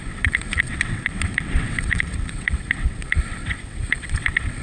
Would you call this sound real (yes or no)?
no